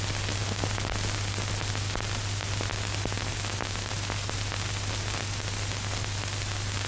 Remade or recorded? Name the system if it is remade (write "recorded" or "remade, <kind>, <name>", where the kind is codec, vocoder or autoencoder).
recorded